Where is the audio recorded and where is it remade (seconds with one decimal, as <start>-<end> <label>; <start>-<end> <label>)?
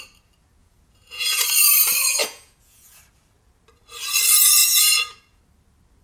0.0-0.6 recorded; 0.6-1.4 remade; 1.4-2.2 recorded; 2.2-3.0 remade; 3.0-4.6 recorded; 4.6-5.4 remade; 5.4-6.0 recorded